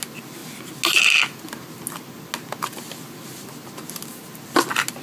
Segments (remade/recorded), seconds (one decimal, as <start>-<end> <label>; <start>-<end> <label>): 0.0-5.0 recorded